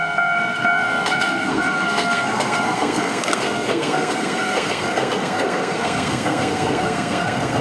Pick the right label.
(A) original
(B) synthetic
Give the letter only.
B